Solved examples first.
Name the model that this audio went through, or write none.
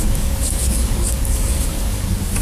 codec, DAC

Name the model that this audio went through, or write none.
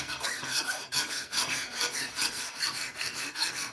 codec, SNAC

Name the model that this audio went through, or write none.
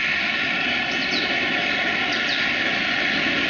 none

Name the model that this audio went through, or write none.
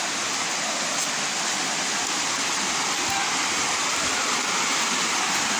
none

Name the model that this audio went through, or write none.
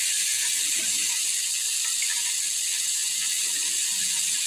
none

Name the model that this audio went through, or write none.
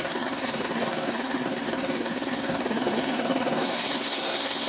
codec, SNAC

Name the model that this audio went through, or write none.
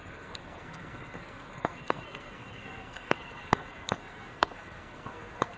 codec, SNAC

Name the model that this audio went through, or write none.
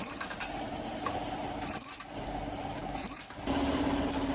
vocoder, BigVGAN v2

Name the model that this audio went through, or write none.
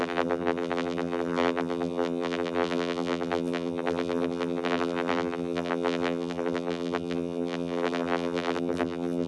vocoder, BigVGAN v2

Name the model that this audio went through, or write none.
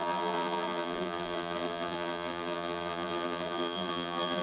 vocoder, BigVGAN v2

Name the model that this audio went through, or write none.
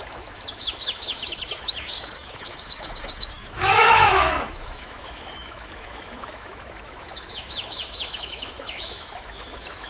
autoencoder, DAC-VAE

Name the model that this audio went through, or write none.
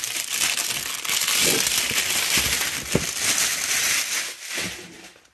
none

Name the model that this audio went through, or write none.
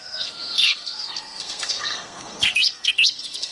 codec, SNAC